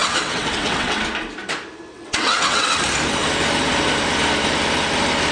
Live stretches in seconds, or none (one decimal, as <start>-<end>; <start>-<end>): 1.0-1.9; 2.8-5.3